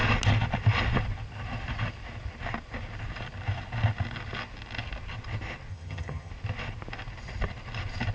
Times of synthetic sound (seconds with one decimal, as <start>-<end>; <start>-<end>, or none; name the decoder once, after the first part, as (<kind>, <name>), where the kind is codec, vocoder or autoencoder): 5.7-6.3 (vocoder, HiFi-GAN)